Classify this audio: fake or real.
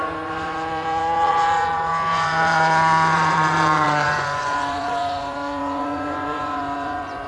fake